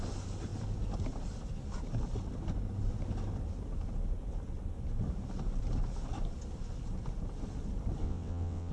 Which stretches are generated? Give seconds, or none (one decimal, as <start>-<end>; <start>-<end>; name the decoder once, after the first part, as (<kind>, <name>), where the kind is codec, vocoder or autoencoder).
8.0-8.7 (vocoder, WaveNeXt)